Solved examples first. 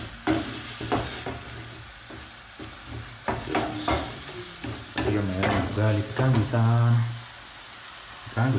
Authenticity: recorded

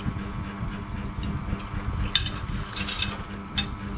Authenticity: recorded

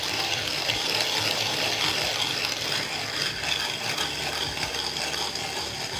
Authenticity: recorded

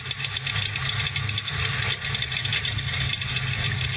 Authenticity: recorded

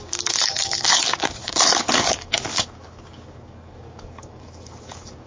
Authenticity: remade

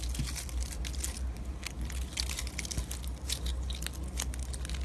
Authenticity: recorded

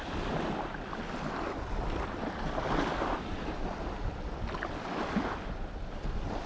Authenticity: recorded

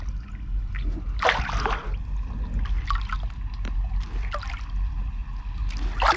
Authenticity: recorded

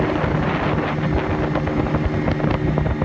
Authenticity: recorded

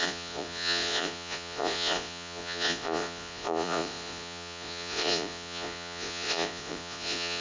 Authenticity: remade